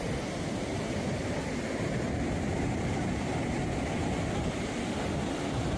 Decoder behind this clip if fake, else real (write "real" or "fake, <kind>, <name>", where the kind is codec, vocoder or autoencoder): real